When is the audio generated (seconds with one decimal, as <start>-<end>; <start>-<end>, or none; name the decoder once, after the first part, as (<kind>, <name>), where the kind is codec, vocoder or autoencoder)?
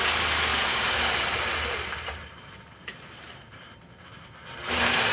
0.0-0.5 (vocoder, BigVGAN v2); 1.1-5.1